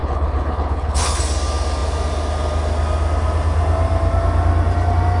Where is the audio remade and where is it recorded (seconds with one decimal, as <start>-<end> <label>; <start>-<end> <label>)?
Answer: 0.0-1.2 remade; 1.2-5.2 recorded